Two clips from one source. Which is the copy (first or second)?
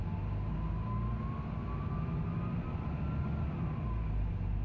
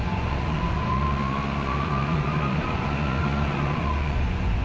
second